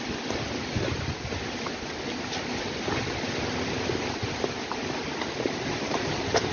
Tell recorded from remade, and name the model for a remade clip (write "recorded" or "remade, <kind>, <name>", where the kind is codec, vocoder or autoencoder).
recorded